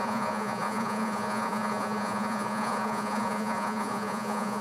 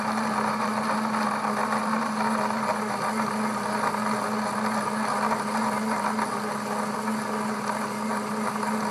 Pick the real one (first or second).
second